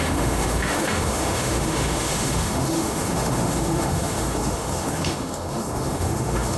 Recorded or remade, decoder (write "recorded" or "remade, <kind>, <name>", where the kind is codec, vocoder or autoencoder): remade, autoencoder, DAC-VAE